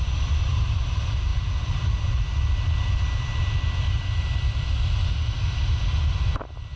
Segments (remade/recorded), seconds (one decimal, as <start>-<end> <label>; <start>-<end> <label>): 0.0-6.8 recorded